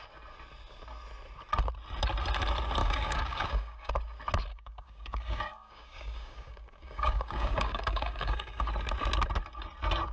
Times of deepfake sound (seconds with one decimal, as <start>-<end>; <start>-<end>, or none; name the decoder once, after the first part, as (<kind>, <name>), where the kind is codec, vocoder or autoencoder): 2.8-3.9 (codec, DAC); 4.5-8.7